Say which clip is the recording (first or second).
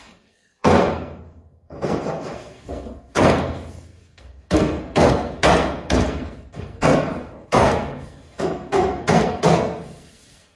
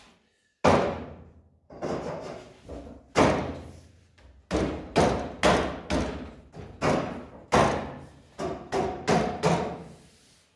second